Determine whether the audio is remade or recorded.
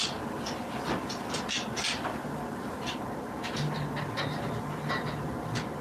recorded